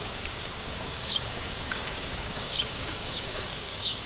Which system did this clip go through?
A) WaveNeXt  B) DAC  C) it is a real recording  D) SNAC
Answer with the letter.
B